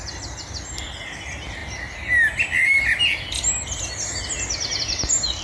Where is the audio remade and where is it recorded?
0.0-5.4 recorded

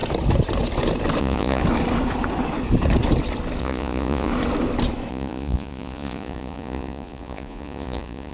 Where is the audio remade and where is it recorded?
0.0-1.2 recorded; 1.2-1.6 remade; 1.6-3.6 recorded; 3.6-4.3 remade; 4.3-5.1 recorded; 5.1-8.3 remade

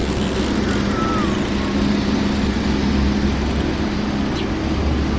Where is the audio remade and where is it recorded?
0.0-5.2 recorded

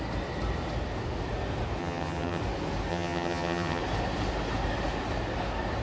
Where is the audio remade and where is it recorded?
0.0-1.8 recorded; 1.8-2.4 remade; 2.4-2.9 recorded; 2.9-3.8 remade; 3.8-5.8 recorded